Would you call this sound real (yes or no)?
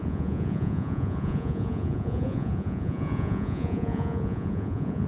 no